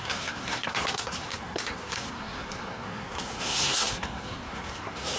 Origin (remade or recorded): remade